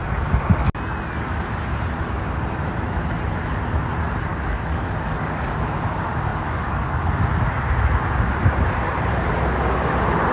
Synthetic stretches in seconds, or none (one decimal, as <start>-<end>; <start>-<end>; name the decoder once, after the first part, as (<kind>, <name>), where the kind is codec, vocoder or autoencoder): 4.3-5.8 (codec, DAC); 6.3-7.0